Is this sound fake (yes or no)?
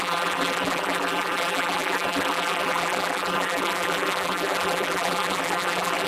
yes